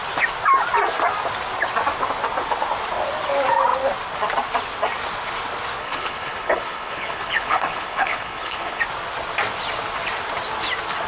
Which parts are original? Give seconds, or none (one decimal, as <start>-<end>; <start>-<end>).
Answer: 0.0-5.8; 8.8-11.1